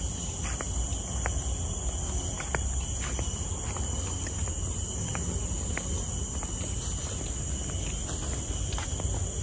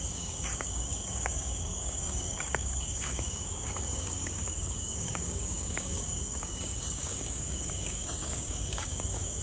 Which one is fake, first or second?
second